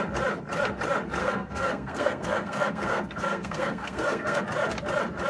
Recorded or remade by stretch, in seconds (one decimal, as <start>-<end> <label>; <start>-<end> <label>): 0.0-1.2 recorded; 1.2-4.4 remade; 4.4-5.3 recorded